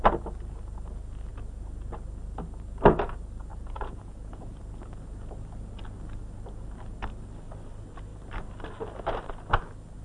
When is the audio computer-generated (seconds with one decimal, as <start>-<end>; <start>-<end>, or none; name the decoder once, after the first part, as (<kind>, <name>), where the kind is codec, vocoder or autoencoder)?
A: 3.5-4.6 (vocoder, Vocos)